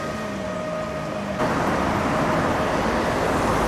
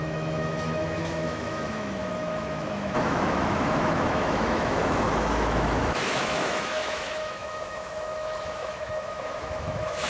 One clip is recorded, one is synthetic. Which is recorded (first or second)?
first